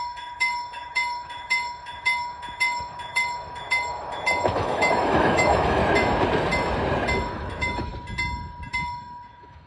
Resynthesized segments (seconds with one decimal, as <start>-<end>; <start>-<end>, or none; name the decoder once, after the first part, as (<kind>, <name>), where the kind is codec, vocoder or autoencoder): 0.0-5.8 (autoencoder, DAC-VAE); 7.3-7.9; 8.7-9.7